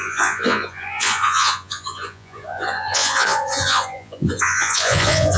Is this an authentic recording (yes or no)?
no